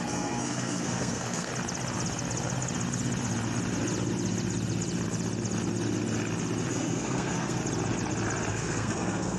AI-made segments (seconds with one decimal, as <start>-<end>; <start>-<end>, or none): 0.0-1.5; 6.7-7.6; 8.5-9.4